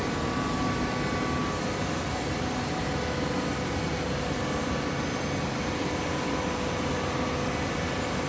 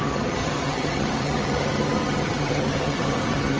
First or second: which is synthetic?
second